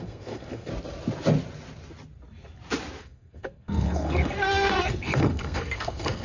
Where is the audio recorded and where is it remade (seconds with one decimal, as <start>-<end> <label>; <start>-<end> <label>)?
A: 0.0-0.7 remade; 0.7-3.0 recorded; 3.0-6.2 remade